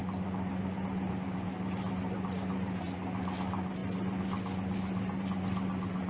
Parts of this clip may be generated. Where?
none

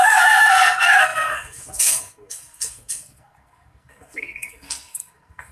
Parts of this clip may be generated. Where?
0.0-5.5

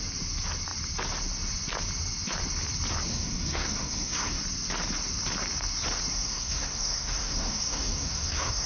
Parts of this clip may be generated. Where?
3.1-4.4; 6.1-8.7

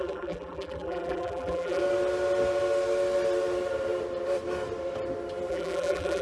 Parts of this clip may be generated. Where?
0.0-1.8; 5.5-6.2

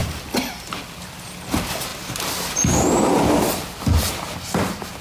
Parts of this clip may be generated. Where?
0.0-0.8

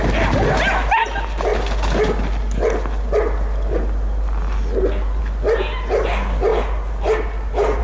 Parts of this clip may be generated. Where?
none